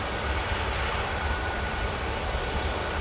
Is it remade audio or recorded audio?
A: remade